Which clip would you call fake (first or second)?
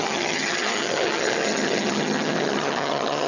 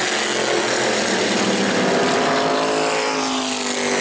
first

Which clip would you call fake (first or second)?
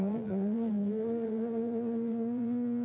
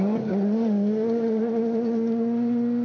first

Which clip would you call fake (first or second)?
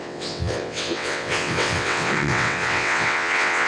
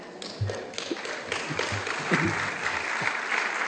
first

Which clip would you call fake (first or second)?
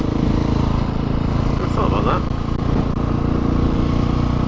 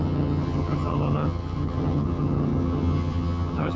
second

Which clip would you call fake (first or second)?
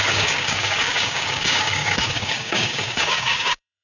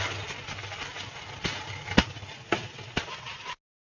first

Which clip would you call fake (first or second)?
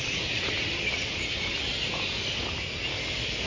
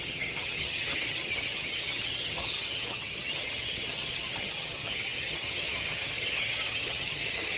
second